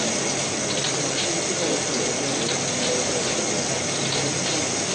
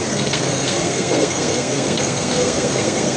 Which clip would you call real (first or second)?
first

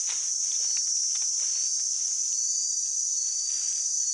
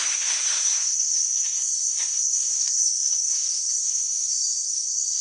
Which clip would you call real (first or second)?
first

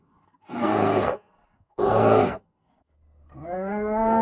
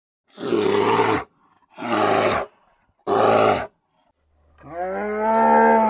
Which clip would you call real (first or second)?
second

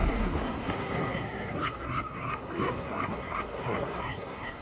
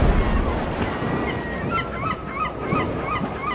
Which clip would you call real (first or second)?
second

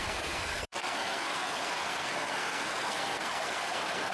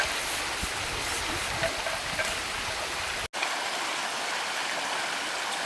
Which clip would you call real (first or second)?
second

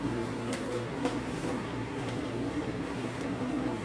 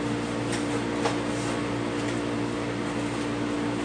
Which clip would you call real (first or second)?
second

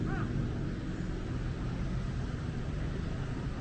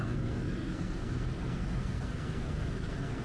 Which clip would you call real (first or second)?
first